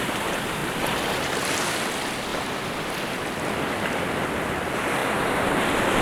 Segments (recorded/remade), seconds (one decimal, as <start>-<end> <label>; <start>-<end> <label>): 0.0-6.0 recorded